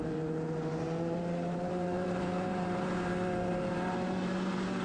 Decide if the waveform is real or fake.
fake